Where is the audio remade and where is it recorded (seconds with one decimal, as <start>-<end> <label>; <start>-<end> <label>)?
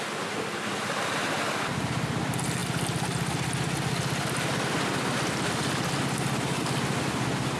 0.0-7.6 recorded